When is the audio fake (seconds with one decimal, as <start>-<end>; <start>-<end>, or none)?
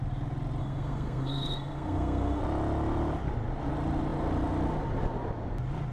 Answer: 0.6-2.4